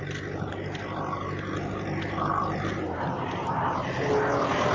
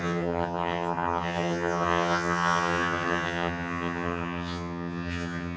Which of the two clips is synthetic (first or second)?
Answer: second